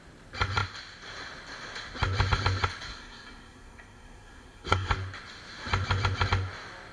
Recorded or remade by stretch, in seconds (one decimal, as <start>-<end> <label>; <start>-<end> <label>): 0.0-2.9 recorded; 2.9-4.9 remade; 4.9-6.9 recorded